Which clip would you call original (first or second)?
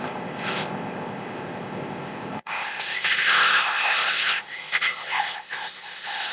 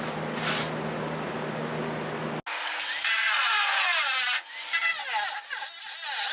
second